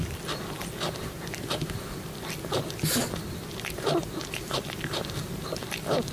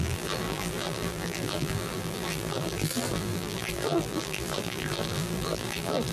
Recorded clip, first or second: first